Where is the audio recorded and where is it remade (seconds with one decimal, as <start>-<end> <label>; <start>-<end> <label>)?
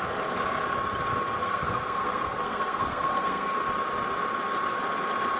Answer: 0.0-1.4 recorded; 1.4-3.6 remade; 3.6-5.4 recorded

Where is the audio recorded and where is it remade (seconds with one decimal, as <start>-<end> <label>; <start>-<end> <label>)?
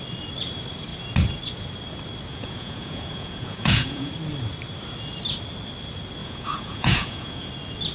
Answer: 0.0-2.3 recorded; 2.3-4.1 remade; 4.1-6.2 recorded; 6.2-7.5 remade; 7.5-7.9 recorded